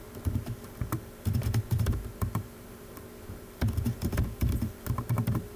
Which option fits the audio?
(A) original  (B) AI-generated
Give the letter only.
B